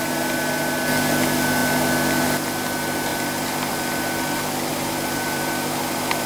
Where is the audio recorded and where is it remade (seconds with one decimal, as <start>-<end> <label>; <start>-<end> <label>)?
0.0-4.7 recorded; 4.7-5.5 remade; 5.5-6.3 recorded